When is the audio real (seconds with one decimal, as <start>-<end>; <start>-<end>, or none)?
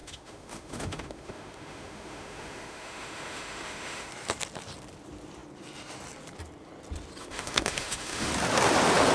4.1-7.2; 8.3-9.1